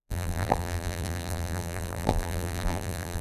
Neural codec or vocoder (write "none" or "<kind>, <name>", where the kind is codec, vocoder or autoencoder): vocoder, BigVGAN v2